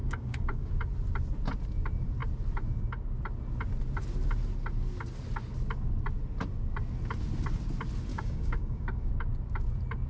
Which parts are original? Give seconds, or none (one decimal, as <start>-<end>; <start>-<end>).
0.7-8.1; 9.1-10.1